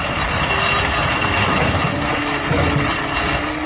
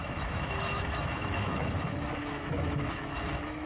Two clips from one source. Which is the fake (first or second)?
second